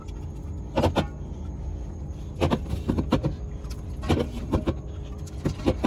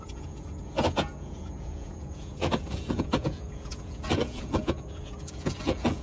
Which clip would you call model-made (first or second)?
second